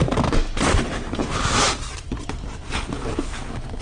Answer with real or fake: real